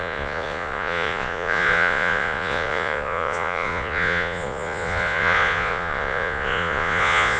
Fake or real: fake